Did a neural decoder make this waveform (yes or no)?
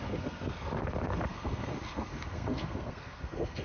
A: yes